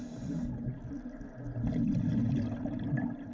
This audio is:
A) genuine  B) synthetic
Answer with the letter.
A